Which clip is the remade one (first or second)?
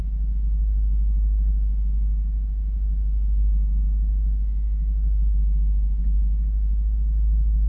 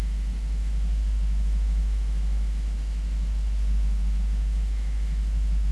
second